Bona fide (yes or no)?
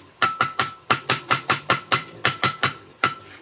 yes